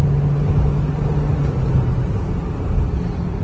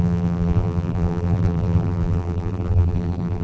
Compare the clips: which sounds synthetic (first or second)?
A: second